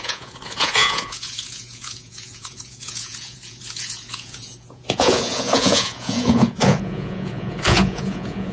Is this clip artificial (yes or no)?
yes